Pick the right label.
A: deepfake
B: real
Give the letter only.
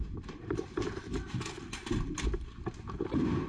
B